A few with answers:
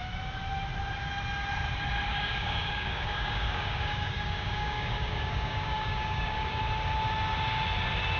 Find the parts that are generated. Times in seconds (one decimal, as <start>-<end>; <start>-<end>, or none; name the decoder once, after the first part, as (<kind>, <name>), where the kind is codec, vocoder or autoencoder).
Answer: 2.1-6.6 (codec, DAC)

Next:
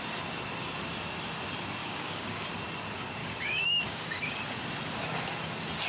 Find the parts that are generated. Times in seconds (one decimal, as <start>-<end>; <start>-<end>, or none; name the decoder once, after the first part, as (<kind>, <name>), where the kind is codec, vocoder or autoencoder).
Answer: 1.8-2.5 (codec, DAC); 3.2-4.4

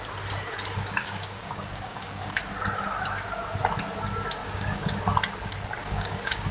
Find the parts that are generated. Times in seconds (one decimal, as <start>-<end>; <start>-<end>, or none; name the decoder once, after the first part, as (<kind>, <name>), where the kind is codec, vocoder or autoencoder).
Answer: 1.0-2.2 (codec, DAC); 4.4-5.0; 5.8-6.5

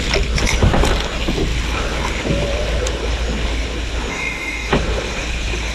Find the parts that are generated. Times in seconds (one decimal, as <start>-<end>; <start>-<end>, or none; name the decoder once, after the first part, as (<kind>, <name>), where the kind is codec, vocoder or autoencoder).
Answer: 4.1-4.7 (codec, DAC)

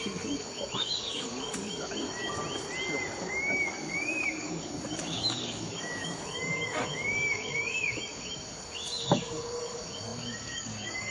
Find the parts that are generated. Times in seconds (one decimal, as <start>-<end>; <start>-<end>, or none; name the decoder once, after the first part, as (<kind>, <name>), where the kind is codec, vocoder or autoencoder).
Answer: 0.0-2.4 (codec, DAC); 3.2-11.1